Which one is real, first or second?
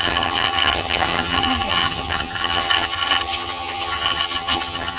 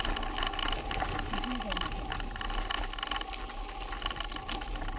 second